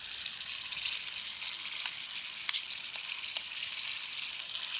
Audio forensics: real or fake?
real